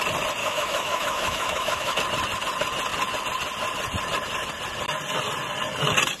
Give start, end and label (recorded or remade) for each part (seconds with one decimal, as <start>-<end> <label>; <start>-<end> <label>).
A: 0.0-0.4 recorded; 0.4-2.0 remade; 2.0-6.2 recorded